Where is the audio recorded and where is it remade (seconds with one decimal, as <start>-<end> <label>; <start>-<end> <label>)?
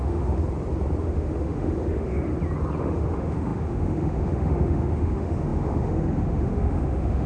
0.0-0.4 remade; 0.4-1.0 recorded; 1.0-2.3 remade; 2.3-2.8 recorded; 2.8-7.3 remade